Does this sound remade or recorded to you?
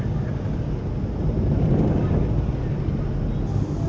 recorded